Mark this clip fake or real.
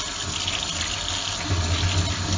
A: real